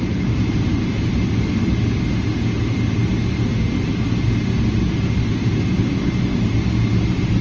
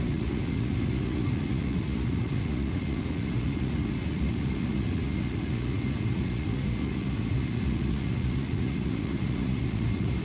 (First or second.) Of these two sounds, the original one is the first